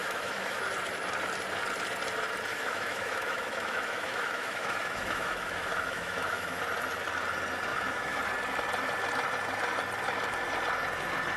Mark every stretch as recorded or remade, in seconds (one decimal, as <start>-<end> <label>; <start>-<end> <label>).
0.0-0.6 remade; 0.6-2.5 recorded; 2.5-6.6 remade; 6.6-7.7 recorded; 7.7-8.2 remade; 8.2-11.4 recorded